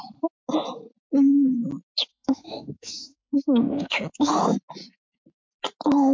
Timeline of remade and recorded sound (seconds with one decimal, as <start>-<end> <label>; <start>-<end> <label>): 0.0-2.1 recorded; 2.1-4.3 remade; 4.3-6.1 recorded